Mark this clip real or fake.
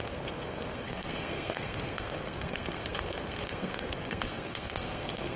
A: fake